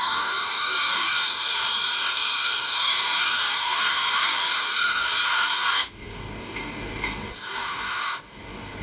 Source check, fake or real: fake